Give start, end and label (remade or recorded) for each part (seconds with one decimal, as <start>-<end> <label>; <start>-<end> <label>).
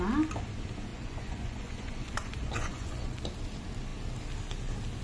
0.0-0.9 recorded; 0.9-3.2 remade; 3.2-5.0 recorded